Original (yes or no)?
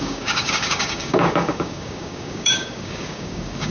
no